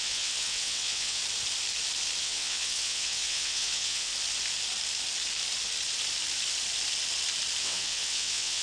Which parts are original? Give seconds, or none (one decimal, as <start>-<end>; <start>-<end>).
1.2-2.2; 4.1-7.6